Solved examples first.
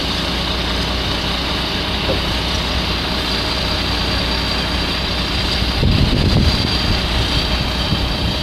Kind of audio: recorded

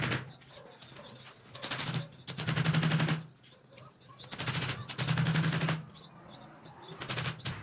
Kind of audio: recorded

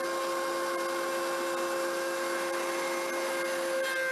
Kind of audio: recorded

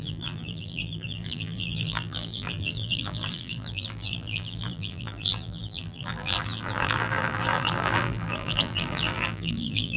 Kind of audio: remade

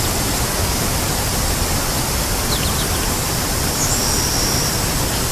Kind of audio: recorded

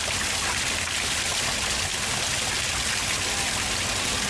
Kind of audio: recorded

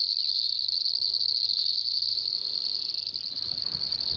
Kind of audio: recorded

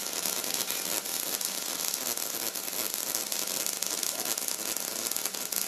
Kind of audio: recorded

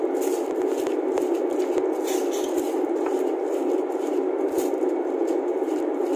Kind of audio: remade